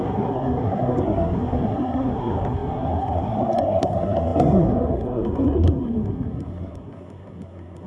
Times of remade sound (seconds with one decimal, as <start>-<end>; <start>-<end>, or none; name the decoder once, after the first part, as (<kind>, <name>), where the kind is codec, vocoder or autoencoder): 0.0-7.9 (codec, SNAC)